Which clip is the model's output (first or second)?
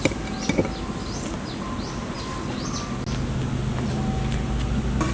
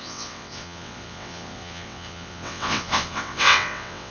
second